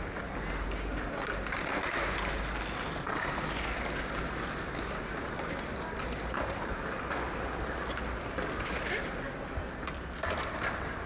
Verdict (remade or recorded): recorded